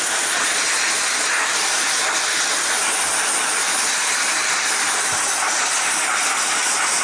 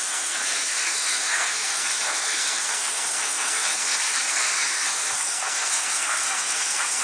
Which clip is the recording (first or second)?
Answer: first